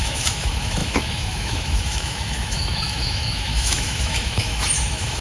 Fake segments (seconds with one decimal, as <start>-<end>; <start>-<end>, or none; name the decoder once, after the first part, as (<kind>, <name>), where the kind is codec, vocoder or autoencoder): 0.0-5.2 (autoencoder, DAC-VAE)